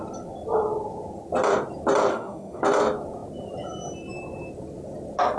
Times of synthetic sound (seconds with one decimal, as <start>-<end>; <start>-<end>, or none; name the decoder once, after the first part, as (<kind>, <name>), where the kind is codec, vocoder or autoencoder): 2.1-2.6 (autoencoder, DAC-VAE)